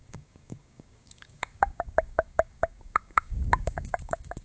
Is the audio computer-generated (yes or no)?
yes